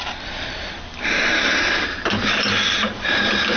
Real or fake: real